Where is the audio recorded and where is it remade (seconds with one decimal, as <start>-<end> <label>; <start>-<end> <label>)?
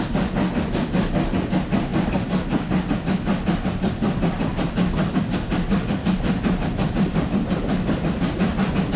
0.0-9.0 recorded